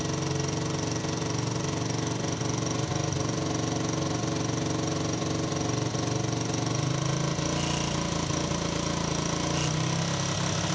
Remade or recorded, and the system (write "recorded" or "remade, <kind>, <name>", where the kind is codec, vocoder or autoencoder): recorded